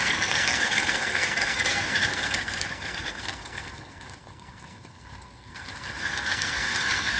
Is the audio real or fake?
fake